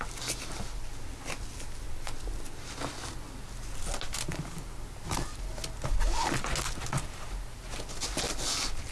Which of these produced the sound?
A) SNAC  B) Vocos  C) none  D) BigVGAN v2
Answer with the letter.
C